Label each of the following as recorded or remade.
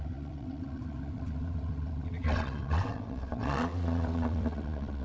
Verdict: remade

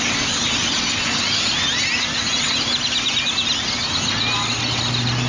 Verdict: recorded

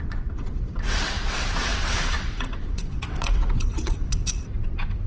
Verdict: remade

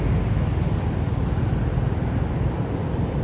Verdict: recorded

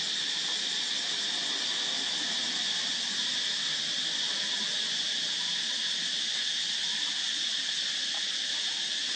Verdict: recorded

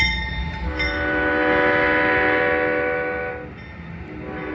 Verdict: recorded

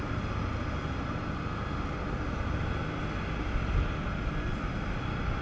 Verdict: recorded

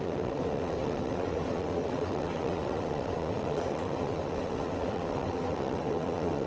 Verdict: remade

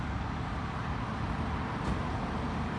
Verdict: recorded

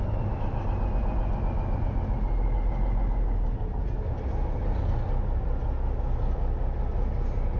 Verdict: recorded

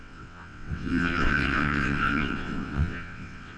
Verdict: remade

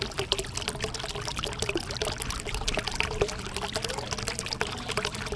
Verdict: recorded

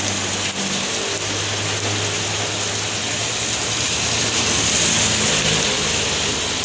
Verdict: recorded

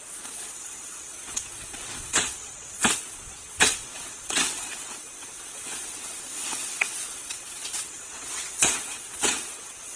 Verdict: remade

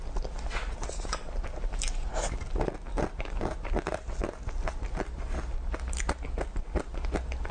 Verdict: recorded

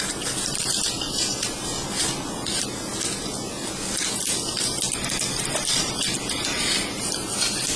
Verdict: recorded